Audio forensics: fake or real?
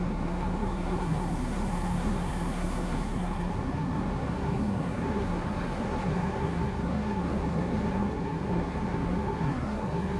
fake